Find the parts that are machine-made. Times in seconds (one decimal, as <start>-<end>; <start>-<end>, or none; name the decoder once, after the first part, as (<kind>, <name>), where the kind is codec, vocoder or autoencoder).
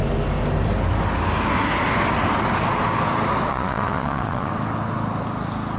3.5-4.5 (vocoder, Vocos)